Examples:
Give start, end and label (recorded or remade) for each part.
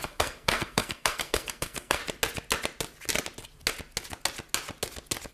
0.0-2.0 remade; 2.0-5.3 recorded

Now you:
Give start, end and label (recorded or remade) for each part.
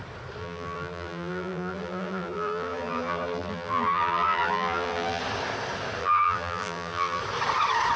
0.0-0.4 recorded; 0.4-5.2 remade; 5.2-6.0 recorded; 6.0-7.2 remade; 7.2-8.0 recorded